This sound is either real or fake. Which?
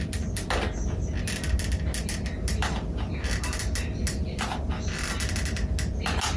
real